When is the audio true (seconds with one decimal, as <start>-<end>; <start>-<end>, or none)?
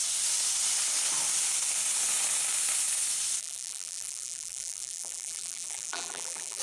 0.0-3.4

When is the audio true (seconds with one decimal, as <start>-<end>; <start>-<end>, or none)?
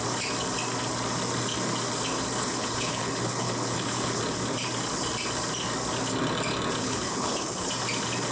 0.0-2.4; 4.2-6.8; 7.7-8.3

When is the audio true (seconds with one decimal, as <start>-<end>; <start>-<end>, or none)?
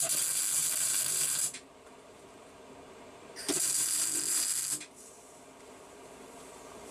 4.6-5.6